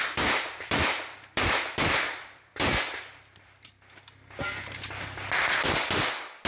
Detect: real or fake real